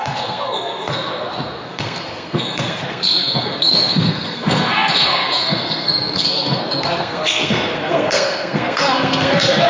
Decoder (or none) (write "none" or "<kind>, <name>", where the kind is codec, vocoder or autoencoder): codec, SNAC